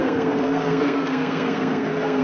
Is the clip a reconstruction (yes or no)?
yes